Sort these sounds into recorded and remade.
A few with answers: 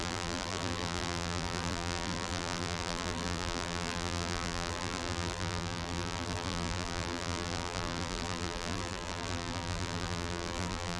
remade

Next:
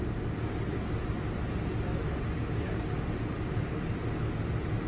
recorded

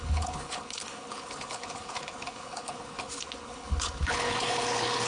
remade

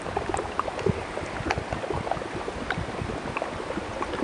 recorded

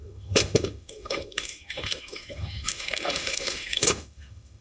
remade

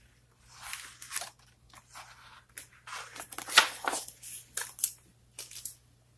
recorded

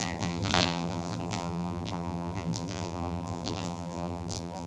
remade